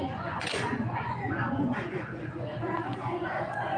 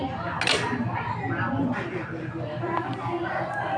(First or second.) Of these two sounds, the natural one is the second